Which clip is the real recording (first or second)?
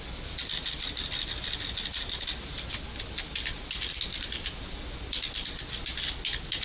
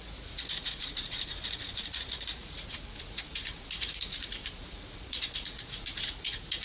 first